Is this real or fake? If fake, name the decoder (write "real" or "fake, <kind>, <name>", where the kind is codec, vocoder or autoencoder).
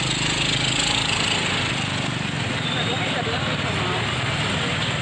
real